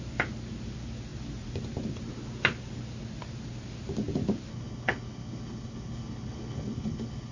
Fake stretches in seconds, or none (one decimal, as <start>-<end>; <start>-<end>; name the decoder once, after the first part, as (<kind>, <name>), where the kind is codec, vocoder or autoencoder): 4.5-7.3 (codec, HILCodec)